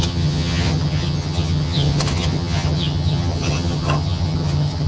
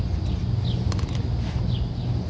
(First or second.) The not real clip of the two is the first